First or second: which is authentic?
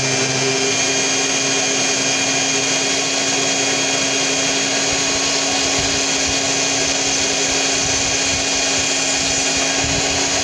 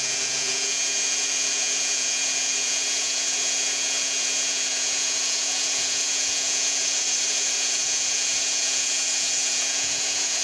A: first